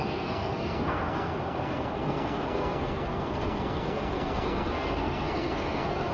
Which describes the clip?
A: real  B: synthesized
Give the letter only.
B